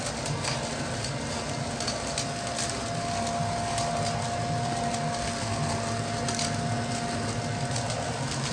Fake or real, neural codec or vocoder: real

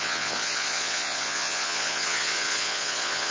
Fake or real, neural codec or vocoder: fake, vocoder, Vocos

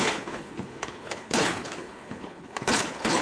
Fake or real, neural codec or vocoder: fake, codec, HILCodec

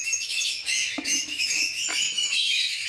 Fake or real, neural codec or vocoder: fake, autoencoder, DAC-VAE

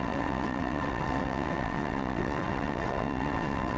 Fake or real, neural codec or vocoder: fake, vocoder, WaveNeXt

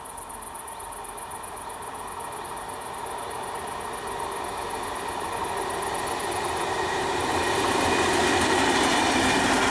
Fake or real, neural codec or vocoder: real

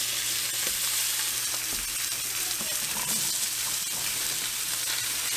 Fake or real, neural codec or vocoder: real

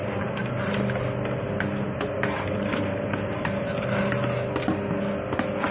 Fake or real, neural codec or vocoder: real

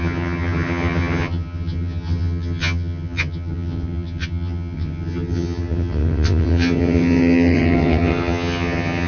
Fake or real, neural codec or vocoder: fake, vocoder, HiFi-GAN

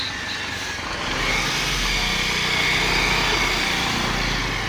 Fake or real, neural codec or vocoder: real